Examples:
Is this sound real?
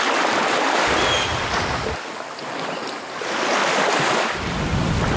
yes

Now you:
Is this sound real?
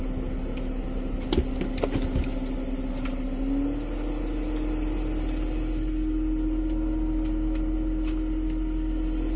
yes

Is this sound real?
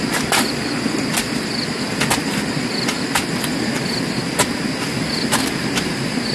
yes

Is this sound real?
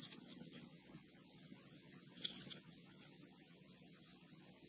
no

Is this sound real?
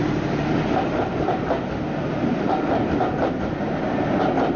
yes